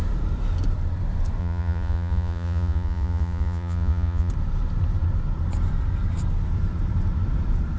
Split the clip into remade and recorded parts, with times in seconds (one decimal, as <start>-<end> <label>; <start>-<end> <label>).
0.0-1.4 recorded; 1.4-4.3 remade; 4.3-7.8 recorded